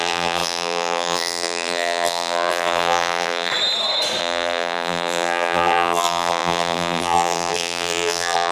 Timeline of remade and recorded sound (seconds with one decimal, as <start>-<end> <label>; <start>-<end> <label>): 0.0-3.5 remade; 3.5-4.2 recorded; 4.2-8.5 remade